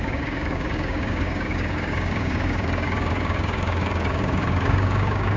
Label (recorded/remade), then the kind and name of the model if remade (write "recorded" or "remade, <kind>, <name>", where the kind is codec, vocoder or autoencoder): remade, codec, DAC